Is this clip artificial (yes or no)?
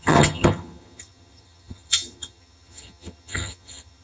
yes